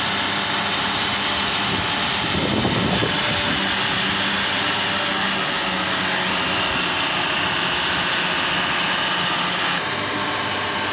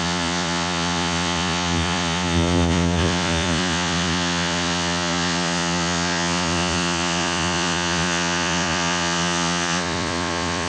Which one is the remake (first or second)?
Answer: second